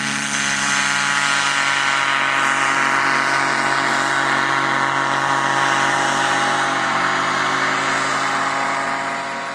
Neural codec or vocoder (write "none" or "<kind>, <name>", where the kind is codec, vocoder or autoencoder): none